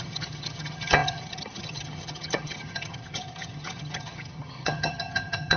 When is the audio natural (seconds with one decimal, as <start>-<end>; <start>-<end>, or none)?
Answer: none